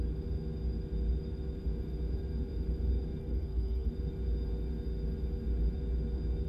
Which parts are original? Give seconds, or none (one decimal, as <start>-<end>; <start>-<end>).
0.0-3.2; 3.9-6.5